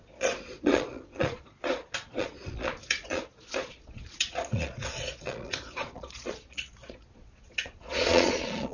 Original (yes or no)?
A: no